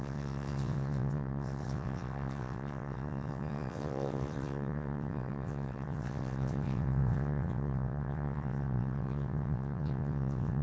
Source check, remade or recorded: remade